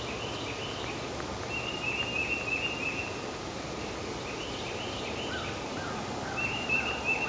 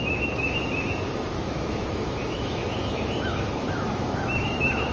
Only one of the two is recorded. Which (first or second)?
first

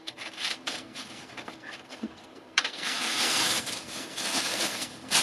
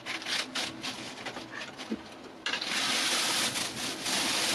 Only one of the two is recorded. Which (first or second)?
second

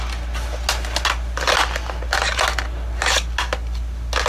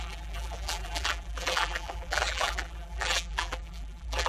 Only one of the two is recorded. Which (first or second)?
first